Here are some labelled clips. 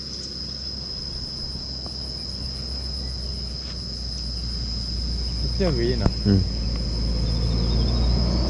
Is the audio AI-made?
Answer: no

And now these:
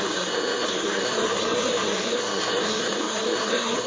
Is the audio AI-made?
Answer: yes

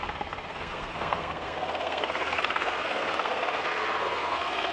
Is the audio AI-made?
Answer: yes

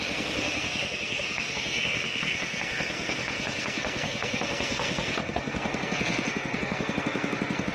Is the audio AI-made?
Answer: yes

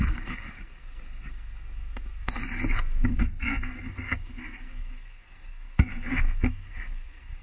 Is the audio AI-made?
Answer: yes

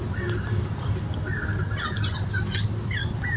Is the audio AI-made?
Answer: no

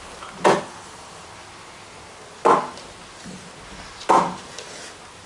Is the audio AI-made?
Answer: no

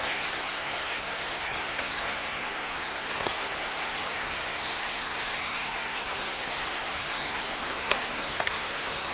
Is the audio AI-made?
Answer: yes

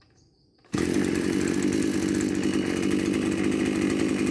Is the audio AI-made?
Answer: no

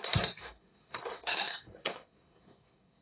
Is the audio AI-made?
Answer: yes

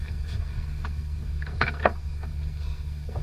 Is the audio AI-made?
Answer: yes